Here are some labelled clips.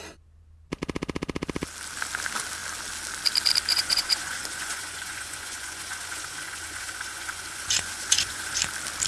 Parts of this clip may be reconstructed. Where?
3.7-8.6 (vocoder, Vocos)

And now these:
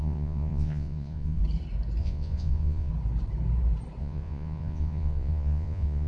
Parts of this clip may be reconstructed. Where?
0.0-1.4 (vocoder, Vocos); 2.0-2.9; 4.0-6.1

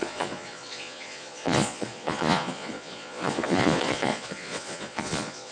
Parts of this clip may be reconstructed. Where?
0.0-5.5 (vocoder, Vocos)